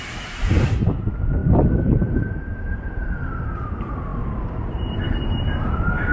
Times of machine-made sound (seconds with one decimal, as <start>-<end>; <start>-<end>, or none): 0.0-6.1